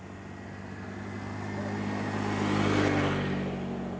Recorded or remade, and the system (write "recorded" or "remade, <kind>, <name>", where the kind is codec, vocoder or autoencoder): recorded